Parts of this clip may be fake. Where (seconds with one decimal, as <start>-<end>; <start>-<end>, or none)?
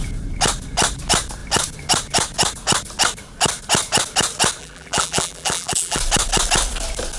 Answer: 4.6-6.0